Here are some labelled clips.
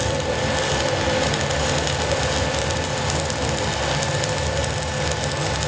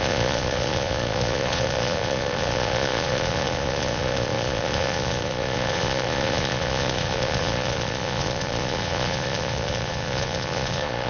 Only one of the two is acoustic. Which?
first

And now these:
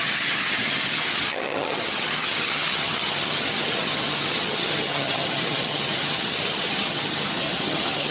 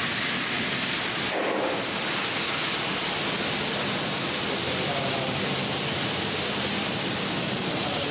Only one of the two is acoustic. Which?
second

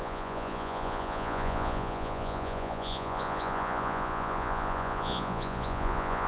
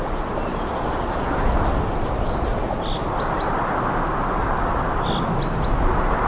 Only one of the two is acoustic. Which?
second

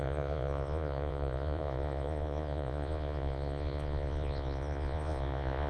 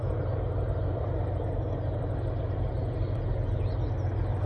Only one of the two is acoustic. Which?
second